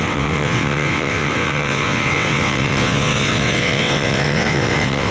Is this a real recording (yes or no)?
no